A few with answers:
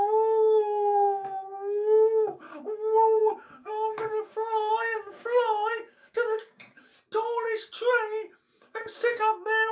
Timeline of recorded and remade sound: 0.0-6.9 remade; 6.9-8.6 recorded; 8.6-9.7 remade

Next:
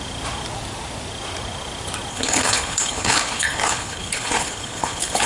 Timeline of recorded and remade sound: 0.0-2.1 recorded; 2.1-5.3 remade

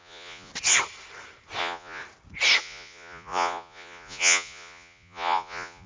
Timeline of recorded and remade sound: 0.0-0.5 remade; 0.5-1.6 recorded; 1.6-2.0 remade; 2.0-2.6 recorded; 2.6-5.9 remade